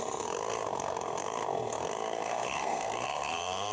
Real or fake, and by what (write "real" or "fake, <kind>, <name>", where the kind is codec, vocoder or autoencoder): fake, codec, SNAC